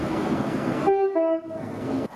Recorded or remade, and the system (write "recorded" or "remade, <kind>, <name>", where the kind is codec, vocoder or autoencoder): remade, codec, SNAC